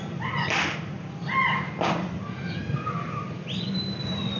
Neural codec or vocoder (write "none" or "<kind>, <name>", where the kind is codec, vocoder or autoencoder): none